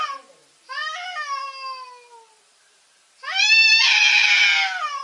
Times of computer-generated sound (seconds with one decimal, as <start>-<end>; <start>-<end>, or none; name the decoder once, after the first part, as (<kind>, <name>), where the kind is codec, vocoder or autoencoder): none